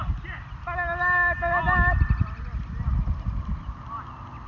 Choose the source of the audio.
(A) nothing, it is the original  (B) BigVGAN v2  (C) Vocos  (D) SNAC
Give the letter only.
A